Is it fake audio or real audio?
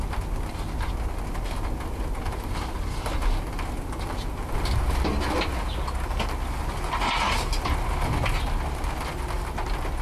real